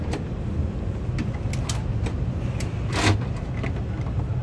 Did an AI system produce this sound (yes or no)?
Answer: no